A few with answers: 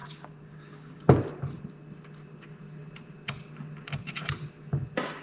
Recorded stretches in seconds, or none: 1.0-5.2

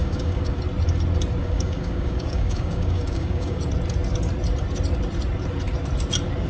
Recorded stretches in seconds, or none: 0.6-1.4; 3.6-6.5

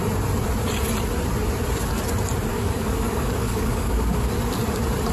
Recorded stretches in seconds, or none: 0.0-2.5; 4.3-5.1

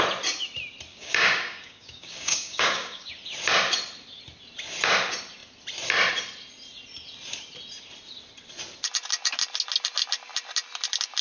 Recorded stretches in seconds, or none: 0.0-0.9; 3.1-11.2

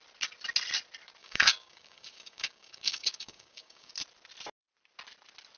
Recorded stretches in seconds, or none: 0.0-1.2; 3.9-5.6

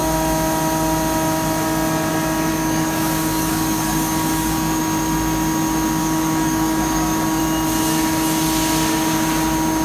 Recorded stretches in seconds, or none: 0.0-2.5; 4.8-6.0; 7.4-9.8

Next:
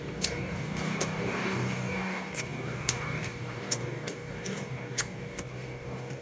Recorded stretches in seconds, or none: none